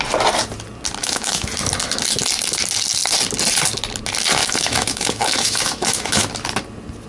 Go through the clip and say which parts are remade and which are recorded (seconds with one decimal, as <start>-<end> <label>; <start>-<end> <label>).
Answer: 0.0-1.0 recorded; 1.0-1.5 remade; 1.5-4.4 recorded; 4.4-6.3 remade; 6.3-7.1 recorded